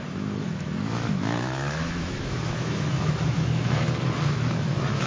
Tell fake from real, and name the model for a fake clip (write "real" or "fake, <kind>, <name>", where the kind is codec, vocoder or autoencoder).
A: fake, autoencoder, DAC-VAE